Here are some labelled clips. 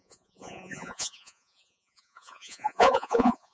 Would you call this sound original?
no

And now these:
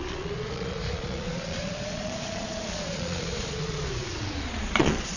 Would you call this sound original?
no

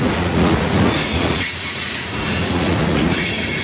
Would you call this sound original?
no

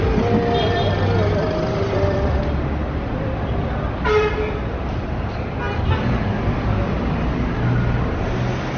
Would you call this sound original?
yes